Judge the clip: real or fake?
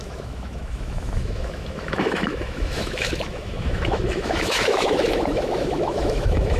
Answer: fake